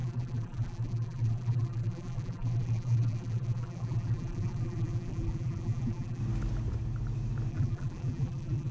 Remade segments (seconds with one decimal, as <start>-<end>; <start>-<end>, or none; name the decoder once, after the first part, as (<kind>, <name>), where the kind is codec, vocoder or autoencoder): 0.0-6.2 (vocoder, BigVGAN v2); 7.5-8.7